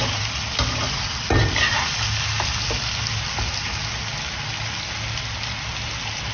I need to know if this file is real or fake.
real